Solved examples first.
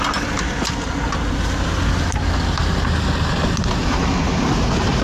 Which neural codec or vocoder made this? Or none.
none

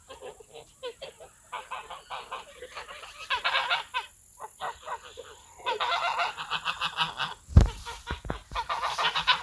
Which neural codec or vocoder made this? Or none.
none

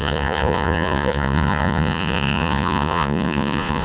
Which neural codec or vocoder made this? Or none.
vocoder, Vocos